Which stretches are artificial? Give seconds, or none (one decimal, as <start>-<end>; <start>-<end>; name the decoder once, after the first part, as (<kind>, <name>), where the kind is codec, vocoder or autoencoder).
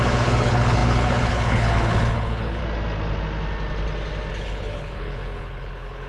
0.0-2.6 (codec, HILCodec); 4.3-6.1